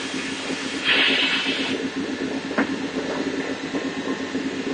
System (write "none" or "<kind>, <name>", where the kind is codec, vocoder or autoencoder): none